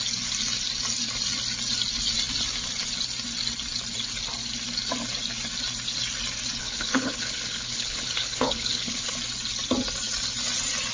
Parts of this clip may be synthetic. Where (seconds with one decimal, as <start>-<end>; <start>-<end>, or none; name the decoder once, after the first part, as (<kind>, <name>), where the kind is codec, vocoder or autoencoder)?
6.6-9.1 (codec, HILCodec)

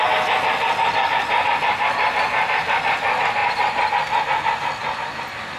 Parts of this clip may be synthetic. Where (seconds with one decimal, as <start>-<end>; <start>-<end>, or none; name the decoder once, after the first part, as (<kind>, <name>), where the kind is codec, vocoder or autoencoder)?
none

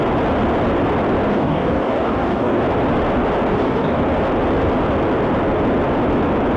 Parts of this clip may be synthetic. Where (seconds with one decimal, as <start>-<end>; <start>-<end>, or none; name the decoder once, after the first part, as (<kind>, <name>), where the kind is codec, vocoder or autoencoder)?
1.3-2.6 (codec, DAC); 3.5-4.0

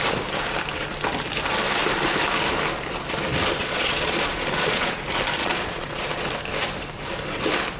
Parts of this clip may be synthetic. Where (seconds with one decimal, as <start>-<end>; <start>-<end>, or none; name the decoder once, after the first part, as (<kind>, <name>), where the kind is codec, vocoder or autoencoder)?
3.6-4.9 (vocoder, Vocos); 5.4-6.3

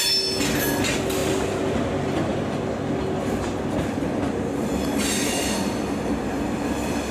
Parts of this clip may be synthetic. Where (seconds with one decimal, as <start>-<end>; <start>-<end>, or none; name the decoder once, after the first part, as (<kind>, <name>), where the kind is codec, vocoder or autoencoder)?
none

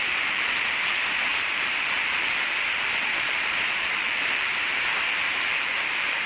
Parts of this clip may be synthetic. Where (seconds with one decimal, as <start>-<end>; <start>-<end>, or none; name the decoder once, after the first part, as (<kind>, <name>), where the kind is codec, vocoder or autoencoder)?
0.0-6.3 (vocoder, BigVGAN v2)

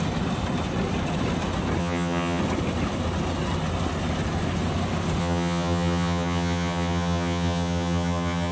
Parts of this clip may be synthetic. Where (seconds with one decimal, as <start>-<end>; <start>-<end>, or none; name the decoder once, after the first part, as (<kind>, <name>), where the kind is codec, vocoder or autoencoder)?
1.8-2.4 (vocoder, HiFi-GAN); 5.2-8.5

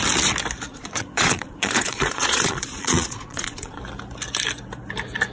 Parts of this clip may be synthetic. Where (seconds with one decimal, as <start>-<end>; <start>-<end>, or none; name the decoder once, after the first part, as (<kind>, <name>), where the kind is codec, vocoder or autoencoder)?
0.7-3.8 (vocoder, Vocos)